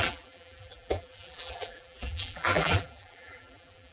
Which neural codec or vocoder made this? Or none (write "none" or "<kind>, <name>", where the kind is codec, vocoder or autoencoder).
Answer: vocoder, BigVGAN v2